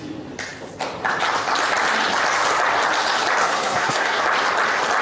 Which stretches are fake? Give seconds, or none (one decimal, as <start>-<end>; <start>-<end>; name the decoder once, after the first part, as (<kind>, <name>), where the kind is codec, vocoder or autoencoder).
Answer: 3.4-4.2 (codec, SNAC)